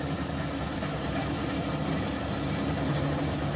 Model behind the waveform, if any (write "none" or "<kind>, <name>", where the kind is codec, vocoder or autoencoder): none